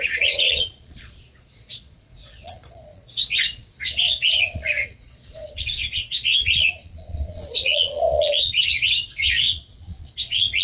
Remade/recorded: remade